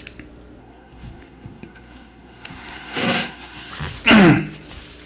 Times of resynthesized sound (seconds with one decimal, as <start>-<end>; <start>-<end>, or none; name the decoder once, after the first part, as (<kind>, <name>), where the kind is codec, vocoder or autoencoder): 0.6-3.7 (codec, SNAC)